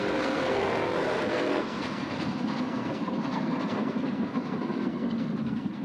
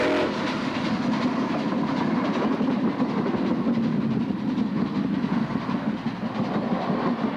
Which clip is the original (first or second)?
second